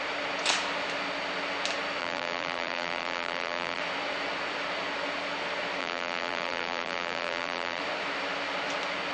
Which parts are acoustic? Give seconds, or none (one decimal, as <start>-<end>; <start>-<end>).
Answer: 0.0-2.0; 3.8-5.8; 7.8-9.1